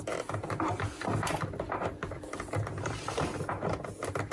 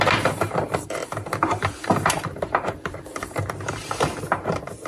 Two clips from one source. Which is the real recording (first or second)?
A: first